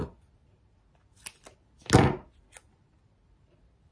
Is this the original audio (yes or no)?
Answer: yes